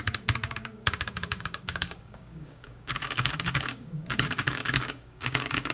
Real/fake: fake